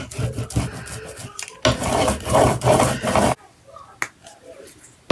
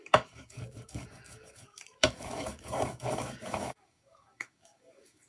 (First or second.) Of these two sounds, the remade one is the second